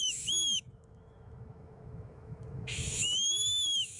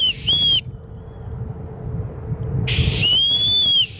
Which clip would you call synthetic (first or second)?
first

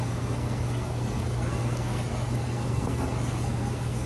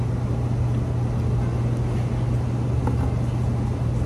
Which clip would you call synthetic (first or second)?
first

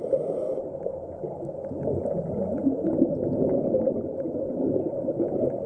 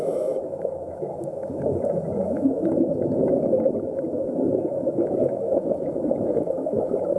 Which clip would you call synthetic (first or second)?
second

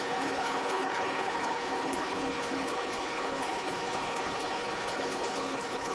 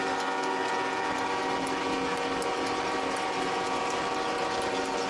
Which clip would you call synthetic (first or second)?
first